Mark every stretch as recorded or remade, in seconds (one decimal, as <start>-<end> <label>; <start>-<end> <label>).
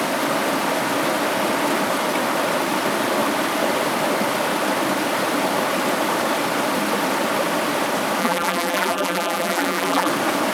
0.0-8.2 recorded; 8.2-10.1 remade; 10.1-10.5 recorded